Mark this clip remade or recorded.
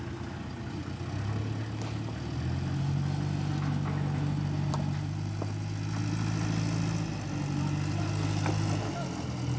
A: recorded